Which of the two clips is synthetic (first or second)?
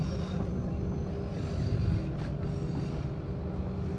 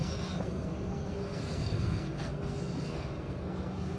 second